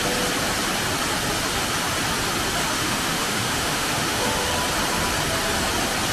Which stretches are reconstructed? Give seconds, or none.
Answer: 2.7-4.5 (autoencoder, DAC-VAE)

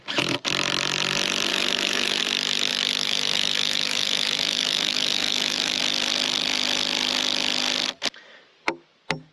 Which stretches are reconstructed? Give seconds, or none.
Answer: 1.5-2.2 (autoencoder, DAC-VAE); 2.7-5.8

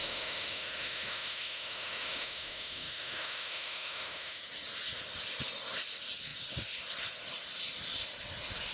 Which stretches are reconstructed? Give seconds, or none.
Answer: 0.0-4.4 (autoencoder, DAC-VAE)